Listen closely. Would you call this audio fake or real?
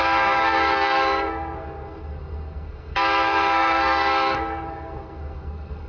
fake